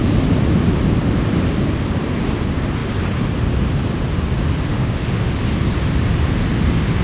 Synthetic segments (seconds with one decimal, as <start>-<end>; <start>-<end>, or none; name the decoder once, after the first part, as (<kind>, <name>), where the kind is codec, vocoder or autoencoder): 4.7-5.3 (autoencoder, DAC-VAE)